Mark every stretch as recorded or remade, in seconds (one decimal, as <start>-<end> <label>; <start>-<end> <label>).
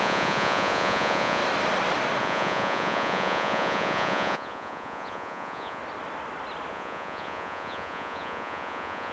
0.0-1.4 remade; 1.4-2.2 recorded; 2.2-5.8 remade; 5.8-6.7 recorded; 6.7-9.1 remade